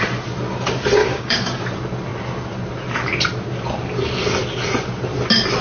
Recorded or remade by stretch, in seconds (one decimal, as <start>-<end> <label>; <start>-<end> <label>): 0.0-1.0 recorded; 1.0-1.6 remade; 1.6-5.6 recorded